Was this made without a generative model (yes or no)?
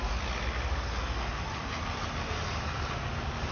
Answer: yes